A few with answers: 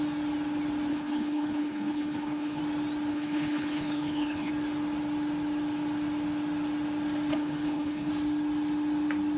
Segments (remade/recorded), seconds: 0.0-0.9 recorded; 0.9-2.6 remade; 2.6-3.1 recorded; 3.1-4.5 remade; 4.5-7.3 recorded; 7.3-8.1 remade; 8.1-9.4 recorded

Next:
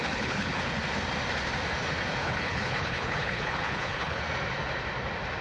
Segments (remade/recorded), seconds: 0.0-0.6 remade; 0.6-2.2 recorded; 2.2-4.2 remade; 4.2-5.4 recorded

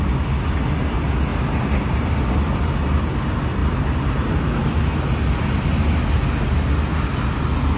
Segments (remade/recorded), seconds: 0.0-7.8 recorded

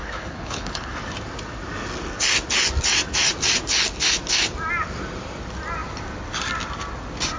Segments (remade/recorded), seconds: 0.0-1.0 remade; 1.0-7.4 recorded

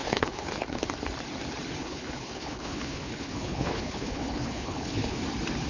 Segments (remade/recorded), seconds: 0.0-0.8 remade; 0.8-1.8 recorded; 1.8-5.2 remade; 5.2-5.7 recorded

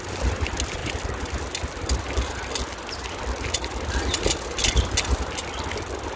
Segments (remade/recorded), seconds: 0.0-6.2 recorded